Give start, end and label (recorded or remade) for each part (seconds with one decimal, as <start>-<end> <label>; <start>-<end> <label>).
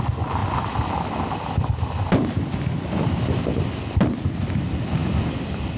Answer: 0.0-5.8 recorded